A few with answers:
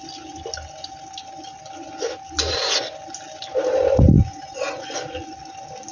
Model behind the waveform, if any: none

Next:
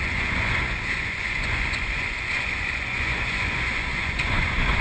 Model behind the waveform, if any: vocoder, Vocos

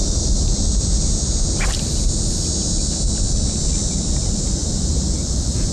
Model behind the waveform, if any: none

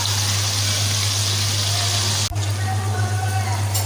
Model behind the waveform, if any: none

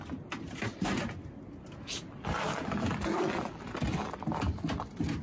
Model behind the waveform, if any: none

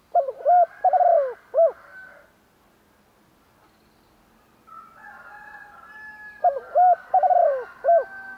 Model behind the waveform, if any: none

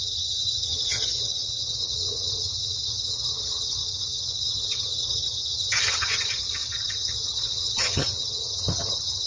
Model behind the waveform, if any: vocoder, HiFi-GAN